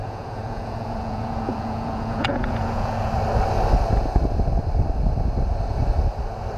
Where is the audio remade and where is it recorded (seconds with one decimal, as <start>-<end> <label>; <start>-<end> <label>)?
0.0-3.1 remade; 3.1-6.6 recorded